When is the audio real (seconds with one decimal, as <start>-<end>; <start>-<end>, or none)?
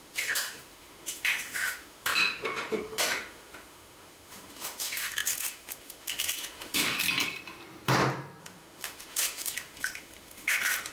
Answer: 7.0-8.4